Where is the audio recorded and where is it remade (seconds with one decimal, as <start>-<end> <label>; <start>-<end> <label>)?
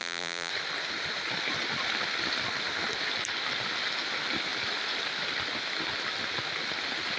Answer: 0.0-0.5 remade; 0.5-7.2 recorded